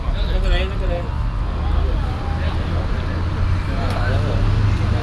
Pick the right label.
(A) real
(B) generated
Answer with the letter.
A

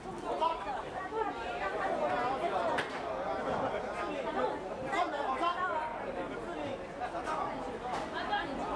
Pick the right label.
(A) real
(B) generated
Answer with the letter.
A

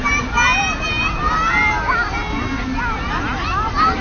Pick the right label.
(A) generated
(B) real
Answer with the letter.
B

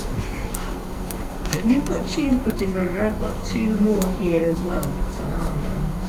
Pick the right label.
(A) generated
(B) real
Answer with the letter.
A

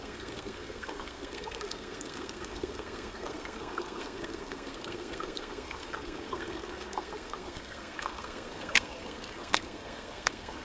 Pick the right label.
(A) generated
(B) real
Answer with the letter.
A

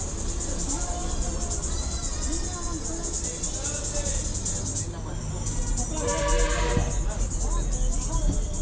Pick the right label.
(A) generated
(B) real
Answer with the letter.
B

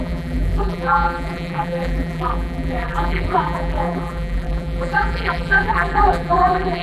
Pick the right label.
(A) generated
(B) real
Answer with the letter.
A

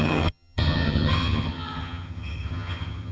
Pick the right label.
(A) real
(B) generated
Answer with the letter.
B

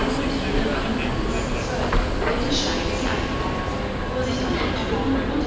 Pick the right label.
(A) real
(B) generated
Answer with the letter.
A